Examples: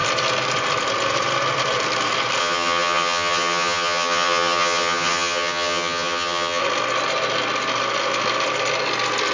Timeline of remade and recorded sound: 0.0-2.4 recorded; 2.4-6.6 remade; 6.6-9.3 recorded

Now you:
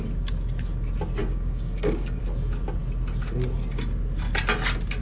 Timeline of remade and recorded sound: 0.0-1.2 recorded; 1.2-2.2 remade; 2.2-5.0 recorded

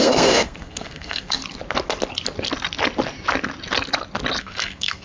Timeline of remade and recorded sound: 0.0-1.4 remade; 1.4-4.4 recorded; 4.4-5.0 remade